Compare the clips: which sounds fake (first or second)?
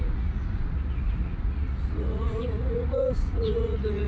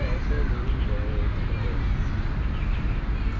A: first